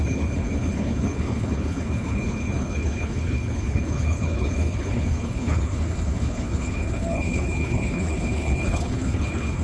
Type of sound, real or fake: fake